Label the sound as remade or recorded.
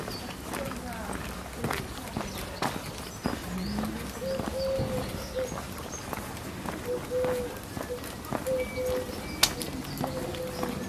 recorded